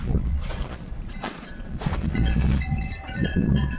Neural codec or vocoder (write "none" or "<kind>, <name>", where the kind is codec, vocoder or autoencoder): vocoder, Vocos